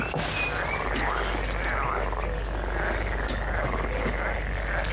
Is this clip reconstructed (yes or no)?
no